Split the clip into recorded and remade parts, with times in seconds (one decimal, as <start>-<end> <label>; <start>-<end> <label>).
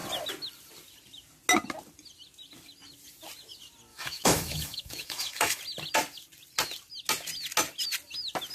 0.0-3.9 recorded; 3.9-5.6 remade; 5.6-8.5 recorded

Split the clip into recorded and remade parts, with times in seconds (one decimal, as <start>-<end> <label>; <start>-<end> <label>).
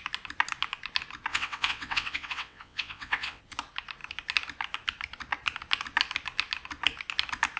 0.0-1.3 recorded; 1.3-3.4 remade; 3.4-7.6 recorded